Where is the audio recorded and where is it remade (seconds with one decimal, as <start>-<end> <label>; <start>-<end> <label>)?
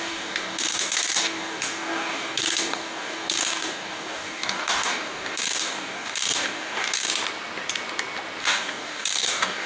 0.0-7.1 remade; 7.1-8.4 recorded; 8.4-9.7 remade